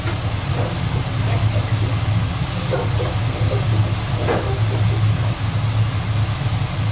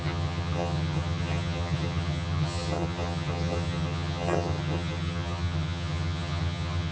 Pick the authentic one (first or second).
first